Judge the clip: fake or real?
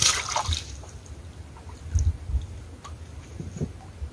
real